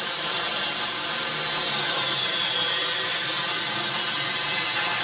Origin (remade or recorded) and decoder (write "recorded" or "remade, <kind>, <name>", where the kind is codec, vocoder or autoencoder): recorded